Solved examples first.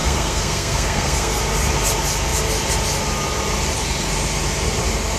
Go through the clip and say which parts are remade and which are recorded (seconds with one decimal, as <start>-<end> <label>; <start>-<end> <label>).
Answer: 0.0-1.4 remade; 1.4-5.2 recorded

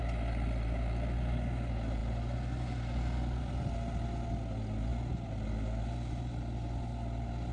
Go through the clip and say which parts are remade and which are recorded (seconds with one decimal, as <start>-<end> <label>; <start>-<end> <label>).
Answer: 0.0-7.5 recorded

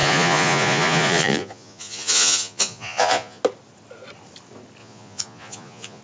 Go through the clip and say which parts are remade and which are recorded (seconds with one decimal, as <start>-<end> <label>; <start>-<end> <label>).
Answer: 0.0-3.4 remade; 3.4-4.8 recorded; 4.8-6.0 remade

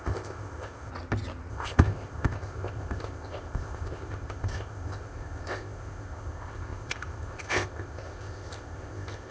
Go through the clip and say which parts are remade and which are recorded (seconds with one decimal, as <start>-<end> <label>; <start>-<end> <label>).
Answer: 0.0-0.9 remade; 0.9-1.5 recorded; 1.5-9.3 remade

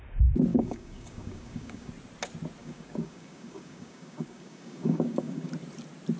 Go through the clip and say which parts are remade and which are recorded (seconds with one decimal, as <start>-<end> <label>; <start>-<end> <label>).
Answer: 0.0-0.5 recorded; 0.5-1.9 remade; 1.9-2.6 recorded; 2.6-5.5 remade; 5.5-6.2 recorded

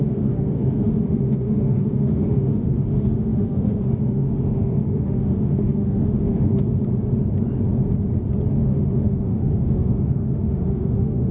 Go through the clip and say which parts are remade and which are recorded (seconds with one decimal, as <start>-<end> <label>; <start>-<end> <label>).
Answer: 0.0-6.8 remade; 6.8-8.5 recorded; 8.5-11.3 remade

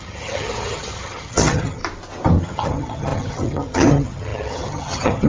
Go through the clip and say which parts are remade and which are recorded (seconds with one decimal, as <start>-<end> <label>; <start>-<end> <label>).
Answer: 0.0-1.8 remade; 1.8-2.4 recorded; 2.4-5.3 remade

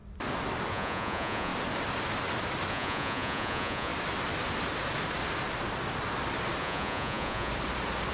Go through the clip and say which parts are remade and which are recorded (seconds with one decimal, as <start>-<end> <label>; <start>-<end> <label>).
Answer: 0.0-0.7 recorded; 0.7-1.5 remade; 1.5-2.7 recorded; 2.7-3.9 remade; 3.9-6.6 recorded; 6.6-7.5 remade; 7.5-8.1 recorded